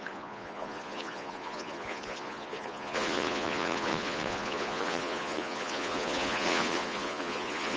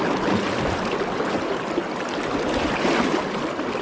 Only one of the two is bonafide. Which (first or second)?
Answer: second